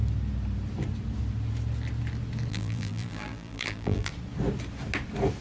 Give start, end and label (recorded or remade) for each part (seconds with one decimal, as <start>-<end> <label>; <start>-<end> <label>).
0.0-2.5 recorded; 2.5-4.1 remade; 4.1-5.4 recorded